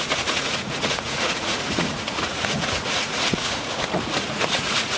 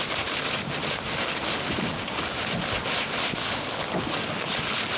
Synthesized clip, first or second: first